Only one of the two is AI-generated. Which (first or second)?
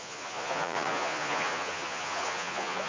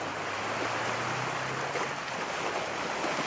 first